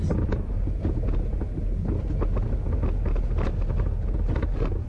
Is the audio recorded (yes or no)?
yes